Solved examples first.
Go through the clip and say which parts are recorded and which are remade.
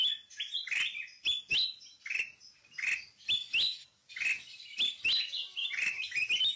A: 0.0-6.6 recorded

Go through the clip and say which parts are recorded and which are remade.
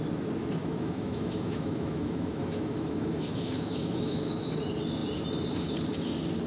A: 0.0-0.6 recorded; 0.6-4.5 remade; 4.5-6.5 recorded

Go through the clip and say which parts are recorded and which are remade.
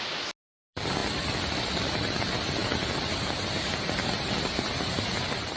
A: 0.0-5.6 recorded